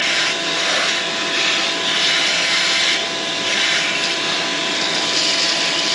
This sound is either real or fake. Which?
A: real